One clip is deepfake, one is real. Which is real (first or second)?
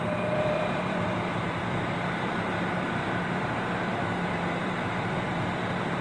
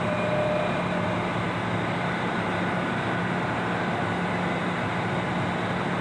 second